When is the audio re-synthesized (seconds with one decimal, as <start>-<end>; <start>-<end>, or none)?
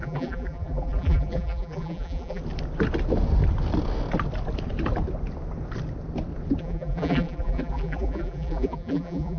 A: 0.0-2.4; 6.6-9.4